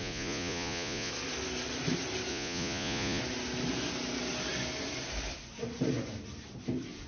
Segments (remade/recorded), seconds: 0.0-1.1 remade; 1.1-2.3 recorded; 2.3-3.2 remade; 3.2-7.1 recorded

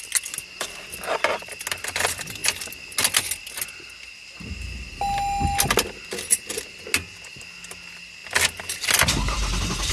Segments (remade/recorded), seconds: 0.0-9.9 recorded

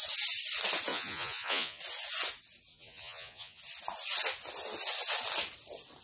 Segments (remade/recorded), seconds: 0.0-0.9 recorded; 0.9-1.8 remade; 1.8-2.7 recorded; 2.7-3.6 remade; 3.6-6.0 recorded

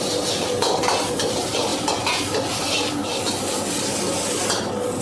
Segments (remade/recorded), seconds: 0.0-5.0 recorded

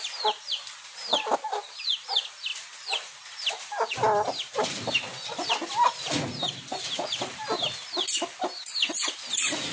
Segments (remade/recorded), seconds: 0.0-9.7 recorded

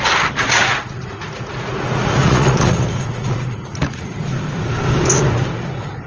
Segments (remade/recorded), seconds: 0.0-0.6 recorded; 0.6-4.2 remade; 4.2-6.1 recorded

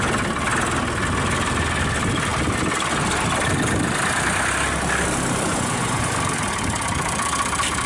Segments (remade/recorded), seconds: 0.0-5.5 recorded; 5.5-6.1 remade; 6.1-7.9 recorded